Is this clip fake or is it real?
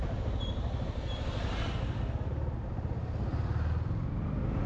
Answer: real